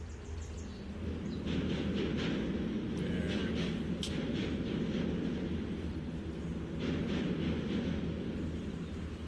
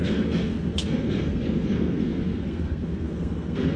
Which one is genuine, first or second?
first